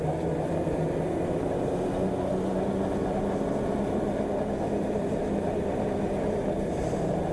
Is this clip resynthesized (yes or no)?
no